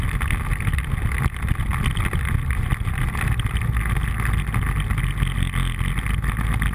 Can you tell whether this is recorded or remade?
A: recorded